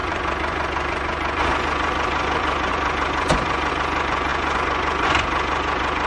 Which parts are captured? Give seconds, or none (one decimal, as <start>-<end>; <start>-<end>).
none